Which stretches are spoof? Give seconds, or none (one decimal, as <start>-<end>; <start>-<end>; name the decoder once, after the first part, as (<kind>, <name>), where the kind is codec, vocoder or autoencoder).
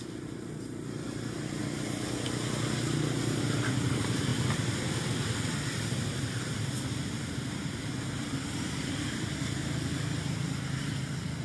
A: 0.0-1.6 (vocoder, BigVGAN v2); 3.4-11.4